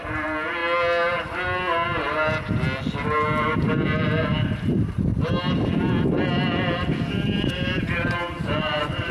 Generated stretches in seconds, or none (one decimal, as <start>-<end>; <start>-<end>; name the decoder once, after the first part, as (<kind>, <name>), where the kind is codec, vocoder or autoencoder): 0.0-0.6 (vocoder, BigVGAN v2); 3.4-5.1; 7.5-9.1